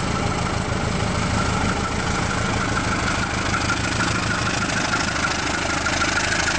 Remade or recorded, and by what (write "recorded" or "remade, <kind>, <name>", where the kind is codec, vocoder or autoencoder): recorded